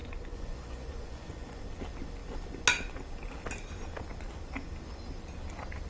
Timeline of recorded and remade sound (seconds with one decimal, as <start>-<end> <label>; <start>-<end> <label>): 0.0-1.6 remade; 1.6-5.9 recorded